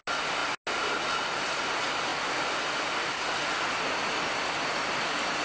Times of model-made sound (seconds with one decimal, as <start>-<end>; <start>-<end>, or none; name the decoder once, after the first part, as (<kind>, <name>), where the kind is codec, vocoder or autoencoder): none